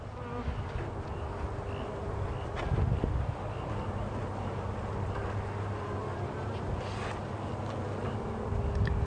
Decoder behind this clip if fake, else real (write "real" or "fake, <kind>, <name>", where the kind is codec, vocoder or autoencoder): real